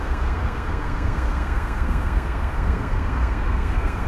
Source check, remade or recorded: remade